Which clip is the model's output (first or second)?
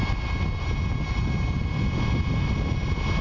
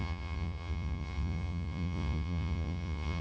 second